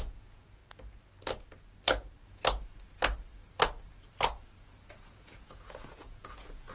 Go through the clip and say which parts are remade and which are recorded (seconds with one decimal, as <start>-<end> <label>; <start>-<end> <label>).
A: 0.0-0.6 remade; 0.6-4.6 recorded; 4.6-6.7 remade